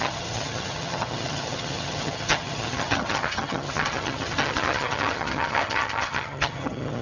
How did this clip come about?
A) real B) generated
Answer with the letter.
B